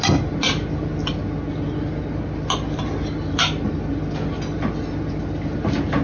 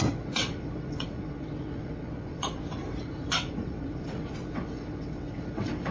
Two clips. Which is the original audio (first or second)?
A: first